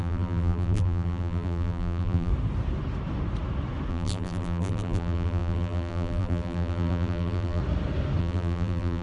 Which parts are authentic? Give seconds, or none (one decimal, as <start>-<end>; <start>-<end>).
2.3-3.9; 7.6-8.2